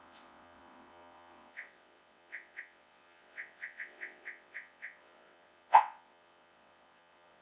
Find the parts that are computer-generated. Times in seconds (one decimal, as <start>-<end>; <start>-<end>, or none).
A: 0.0-7.4